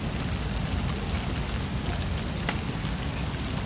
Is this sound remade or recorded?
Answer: recorded